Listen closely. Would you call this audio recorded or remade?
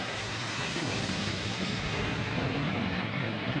remade